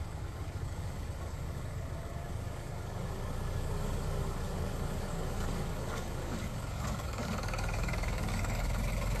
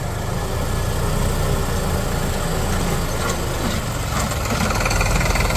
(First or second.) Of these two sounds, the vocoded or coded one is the first